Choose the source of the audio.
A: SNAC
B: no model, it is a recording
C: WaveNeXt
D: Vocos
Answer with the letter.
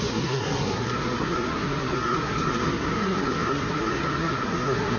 A